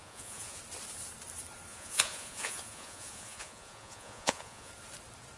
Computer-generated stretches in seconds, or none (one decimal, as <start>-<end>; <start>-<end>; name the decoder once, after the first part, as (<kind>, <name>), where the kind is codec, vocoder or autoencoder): 0.0-0.6 (vocoder, Vocos); 1.7-4.7